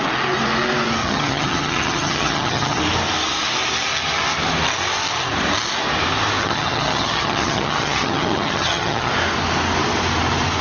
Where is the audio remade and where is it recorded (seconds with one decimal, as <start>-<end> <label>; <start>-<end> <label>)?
0.0-1.0 recorded; 1.0-2.8 remade; 2.8-6.4 recorded; 6.4-9.1 remade; 9.1-10.6 recorded